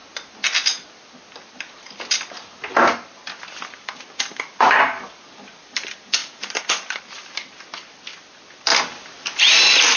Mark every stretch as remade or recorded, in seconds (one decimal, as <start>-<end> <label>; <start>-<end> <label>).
0.0-3.4 recorded; 3.4-10.0 remade

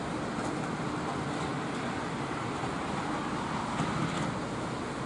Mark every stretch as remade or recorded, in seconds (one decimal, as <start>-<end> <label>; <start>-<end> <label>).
0.0-1.5 recorded; 1.5-3.0 remade; 3.0-5.1 recorded